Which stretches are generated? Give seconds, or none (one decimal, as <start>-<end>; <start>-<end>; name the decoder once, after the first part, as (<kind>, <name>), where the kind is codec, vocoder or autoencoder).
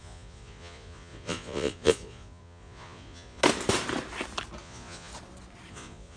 0.0-3.4 (vocoder, Vocos); 4.6-5.1; 5.7-6.2